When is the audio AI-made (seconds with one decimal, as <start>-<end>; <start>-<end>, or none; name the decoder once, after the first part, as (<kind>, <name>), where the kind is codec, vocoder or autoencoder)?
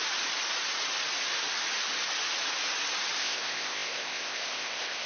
3.2-5.1 (codec, ZipCodec)